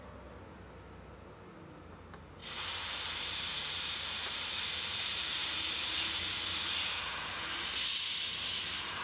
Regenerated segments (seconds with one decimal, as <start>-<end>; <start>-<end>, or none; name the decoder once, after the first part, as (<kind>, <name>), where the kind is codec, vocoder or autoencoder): 2.4-7.4 (vocoder, BigVGAN v2)